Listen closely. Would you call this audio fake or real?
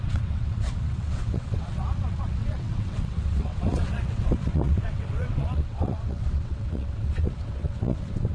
fake